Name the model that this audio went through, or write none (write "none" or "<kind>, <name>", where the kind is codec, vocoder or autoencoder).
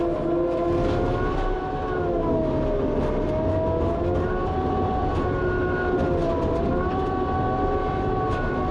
none